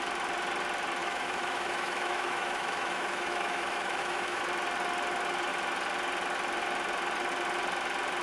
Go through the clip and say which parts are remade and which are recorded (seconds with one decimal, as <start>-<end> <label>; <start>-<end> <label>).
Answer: 0.0-1.0 recorded; 1.0-4.4 remade; 4.4-8.2 recorded